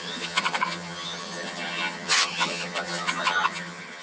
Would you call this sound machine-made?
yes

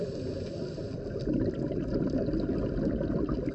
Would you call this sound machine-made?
no